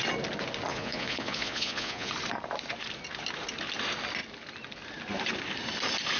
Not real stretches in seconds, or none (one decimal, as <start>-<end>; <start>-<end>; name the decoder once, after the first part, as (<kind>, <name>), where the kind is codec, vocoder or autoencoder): 0.7-2.1 (vocoder, Vocos)